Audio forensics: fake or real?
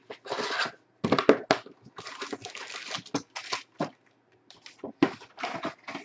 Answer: real